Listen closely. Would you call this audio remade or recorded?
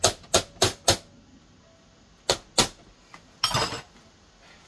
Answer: recorded